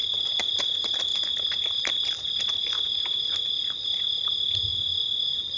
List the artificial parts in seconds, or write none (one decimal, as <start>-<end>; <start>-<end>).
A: 0.0-4.7